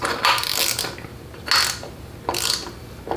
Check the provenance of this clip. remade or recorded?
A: recorded